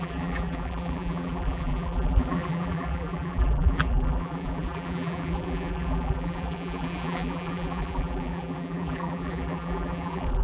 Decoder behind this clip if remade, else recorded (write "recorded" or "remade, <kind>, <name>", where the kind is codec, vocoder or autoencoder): remade, vocoder, BigVGAN v2